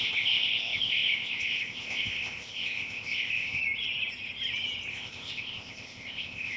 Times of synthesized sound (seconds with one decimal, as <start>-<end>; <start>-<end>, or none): 0.0-3.6; 4.9-6.6